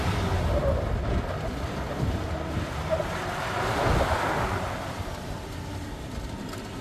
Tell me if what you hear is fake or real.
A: real